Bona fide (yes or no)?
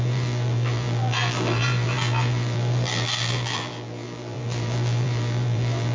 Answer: no